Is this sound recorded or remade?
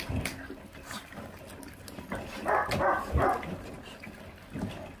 recorded